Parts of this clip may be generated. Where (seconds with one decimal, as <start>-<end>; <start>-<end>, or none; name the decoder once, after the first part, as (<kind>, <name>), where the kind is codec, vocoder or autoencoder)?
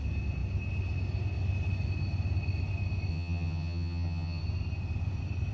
3.1-4.4 (vocoder, HiFi-GAN)